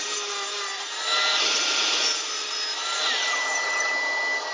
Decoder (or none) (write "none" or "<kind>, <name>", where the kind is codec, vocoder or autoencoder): none